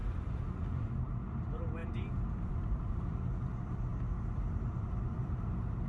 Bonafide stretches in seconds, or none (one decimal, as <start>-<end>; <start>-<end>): 0.0-1.0; 1.8-2.5; 3.9-4.7